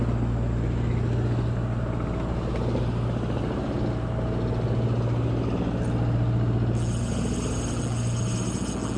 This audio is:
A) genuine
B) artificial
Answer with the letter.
A